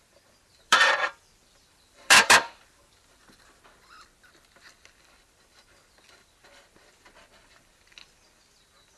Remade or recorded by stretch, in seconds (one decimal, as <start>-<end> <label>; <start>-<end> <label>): 0.0-0.5 recorded; 0.5-3.6 remade; 3.6-9.0 recorded